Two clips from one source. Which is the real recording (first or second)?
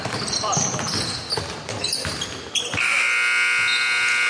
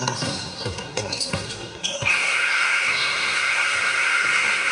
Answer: first